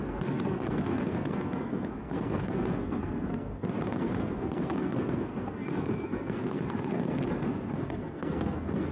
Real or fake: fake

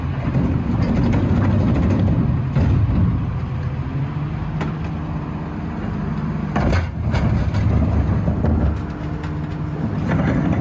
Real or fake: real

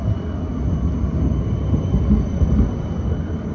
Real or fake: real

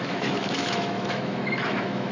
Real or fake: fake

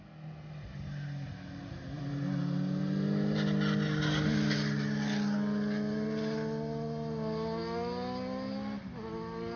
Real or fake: real